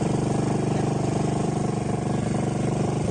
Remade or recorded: remade